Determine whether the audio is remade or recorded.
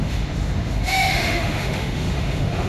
remade